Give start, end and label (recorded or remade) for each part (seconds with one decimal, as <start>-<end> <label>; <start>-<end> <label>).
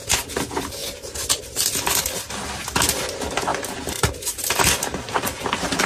0.0-0.8 recorded; 0.8-2.3 remade; 2.3-3.5 recorded; 3.5-4.5 remade; 4.5-5.9 recorded